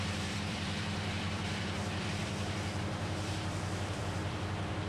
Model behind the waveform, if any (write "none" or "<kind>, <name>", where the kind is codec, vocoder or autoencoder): vocoder, BigVGAN v2